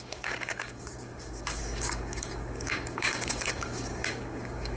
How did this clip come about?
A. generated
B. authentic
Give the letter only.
A